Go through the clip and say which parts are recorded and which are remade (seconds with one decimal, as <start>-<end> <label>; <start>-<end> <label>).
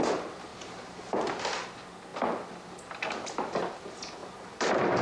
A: 0.0-0.5 recorded; 0.5-1.4 remade; 1.4-4.2 recorded; 4.2-5.0 remade